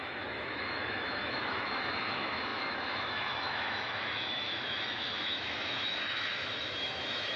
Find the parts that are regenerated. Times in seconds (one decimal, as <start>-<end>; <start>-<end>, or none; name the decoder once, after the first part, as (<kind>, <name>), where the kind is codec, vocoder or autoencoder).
0.0-7.4 (autoencoder, DAC-VAE)